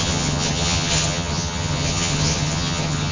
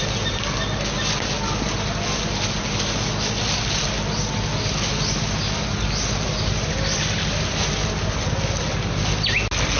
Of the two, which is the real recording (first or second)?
second